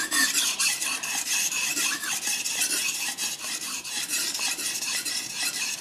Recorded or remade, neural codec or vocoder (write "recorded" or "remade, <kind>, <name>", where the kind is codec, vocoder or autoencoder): remade, vocoder, BigVGAN v2